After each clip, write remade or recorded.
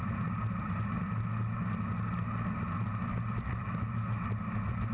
recorded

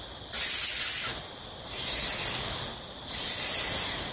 recorded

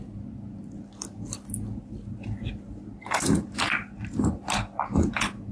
recorded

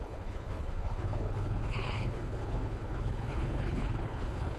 remade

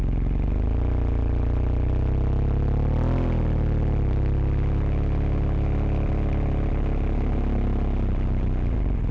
recorded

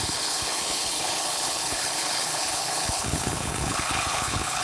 remade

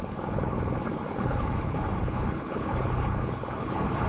remade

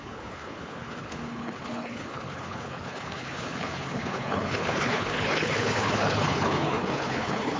remade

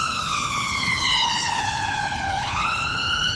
remade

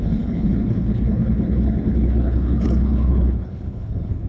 remade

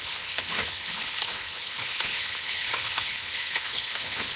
remade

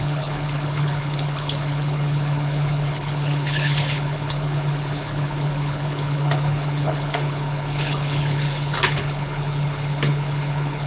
remade